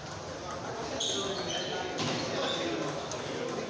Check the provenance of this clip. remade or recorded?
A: recorded